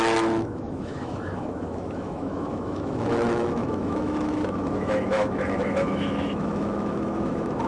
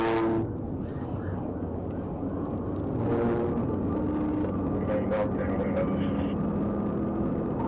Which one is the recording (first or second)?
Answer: second